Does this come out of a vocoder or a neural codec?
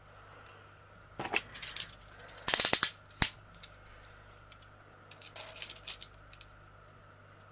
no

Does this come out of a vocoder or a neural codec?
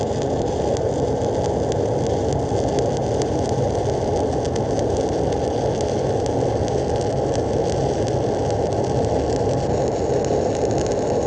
no